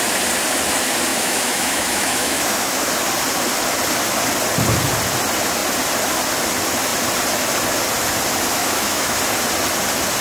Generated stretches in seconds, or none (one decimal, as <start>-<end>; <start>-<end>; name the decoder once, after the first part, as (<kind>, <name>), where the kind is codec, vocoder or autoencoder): 1.1-2.9 (autoencoder, DAC-VAE); 8.6-9.2